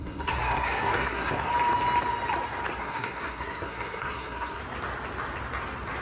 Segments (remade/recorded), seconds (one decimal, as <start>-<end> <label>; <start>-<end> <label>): 0.0-1.5 remade; 1.5-2.8 recorded; 2.8-4.6 remade; 4.6-6.0 recorded